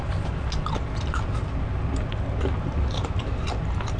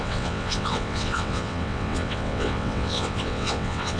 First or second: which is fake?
second